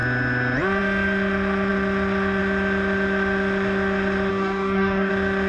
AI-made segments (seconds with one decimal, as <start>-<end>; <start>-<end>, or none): 4.3-5.1